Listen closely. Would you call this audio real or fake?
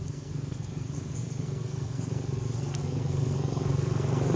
fake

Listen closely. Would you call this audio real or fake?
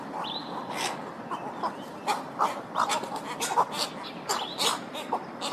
real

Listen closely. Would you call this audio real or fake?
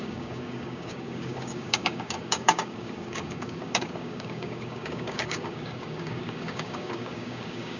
fake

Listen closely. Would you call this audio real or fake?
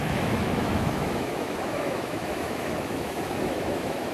fake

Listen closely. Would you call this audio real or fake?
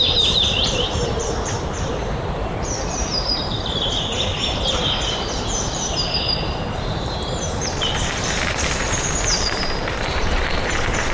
fake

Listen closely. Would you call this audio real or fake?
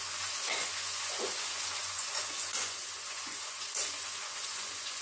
fake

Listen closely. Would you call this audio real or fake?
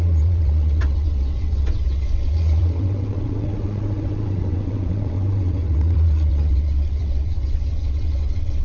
fake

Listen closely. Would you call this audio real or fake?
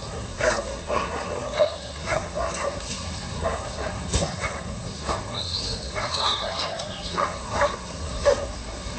fake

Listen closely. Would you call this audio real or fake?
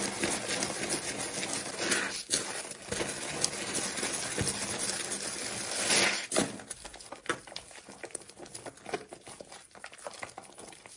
real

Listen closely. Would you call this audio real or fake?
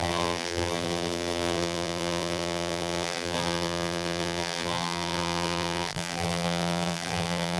fake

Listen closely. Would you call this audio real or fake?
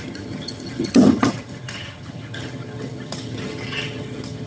fake